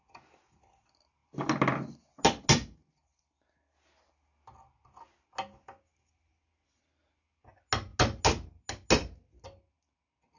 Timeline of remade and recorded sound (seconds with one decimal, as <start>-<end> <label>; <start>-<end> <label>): 0.0-10.4 recorded

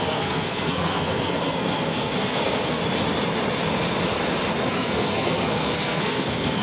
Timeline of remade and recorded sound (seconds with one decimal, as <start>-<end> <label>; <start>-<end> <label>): 0.0-2.8 remade; 2.8-4.7 recorded; 4.7-6.6 remade